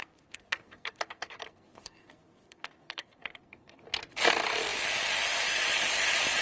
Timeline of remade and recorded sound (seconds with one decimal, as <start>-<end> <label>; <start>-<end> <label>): 0.0-3.8 remade; 3.8-6.4 recorded